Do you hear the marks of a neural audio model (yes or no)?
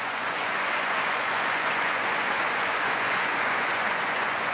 yes